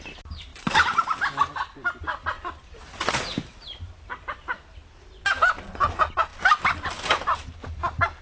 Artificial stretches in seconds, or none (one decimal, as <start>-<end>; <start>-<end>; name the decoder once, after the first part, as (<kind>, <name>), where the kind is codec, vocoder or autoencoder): none